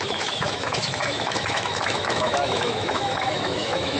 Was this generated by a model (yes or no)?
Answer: yes